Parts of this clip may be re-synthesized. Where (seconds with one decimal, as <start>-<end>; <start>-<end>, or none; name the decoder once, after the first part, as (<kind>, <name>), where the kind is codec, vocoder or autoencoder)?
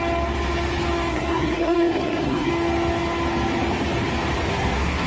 1.1-2.5 (codec, SNAC); 4.5-5.1